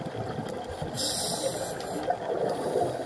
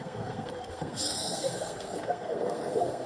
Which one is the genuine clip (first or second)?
first